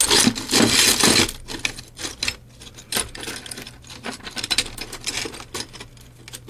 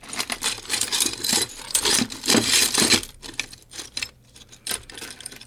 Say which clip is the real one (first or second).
first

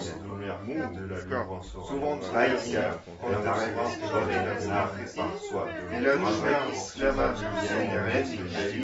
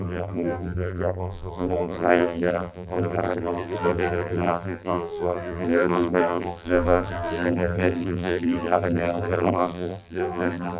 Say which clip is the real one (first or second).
first